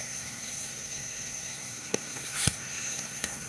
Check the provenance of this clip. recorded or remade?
remade